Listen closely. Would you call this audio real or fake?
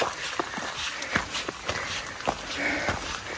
real